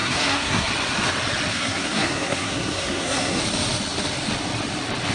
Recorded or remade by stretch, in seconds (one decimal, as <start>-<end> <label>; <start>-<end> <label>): 0.0-0.7 remade; 0.7-1.5 recorded; 1.5-3.4 remade; 3.4-5.1 recorded